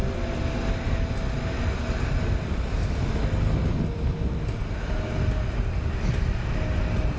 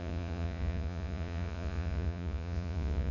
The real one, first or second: first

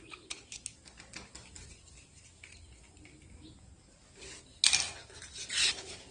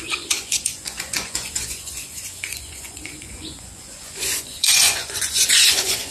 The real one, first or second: first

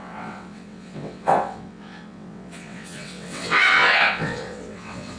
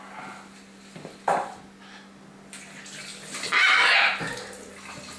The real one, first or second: second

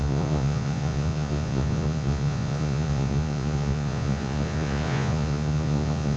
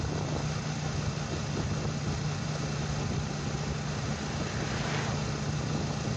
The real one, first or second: second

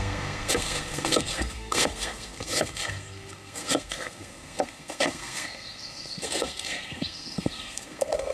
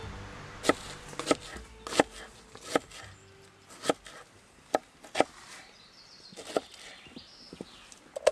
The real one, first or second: second